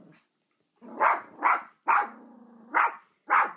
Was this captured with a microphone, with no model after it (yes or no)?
yes